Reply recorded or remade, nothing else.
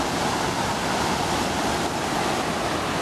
recorded